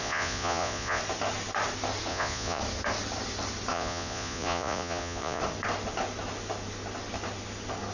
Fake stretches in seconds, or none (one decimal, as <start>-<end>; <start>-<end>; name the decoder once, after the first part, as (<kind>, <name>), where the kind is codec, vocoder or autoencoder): 0.0-1.0 (vocoder, Vocos); 2.1-2.6; 3.7-5.4